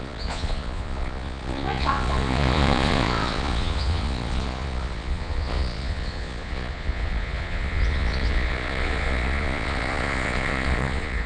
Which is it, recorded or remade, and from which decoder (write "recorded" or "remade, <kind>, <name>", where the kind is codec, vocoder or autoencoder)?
remade, vocoder, Vocos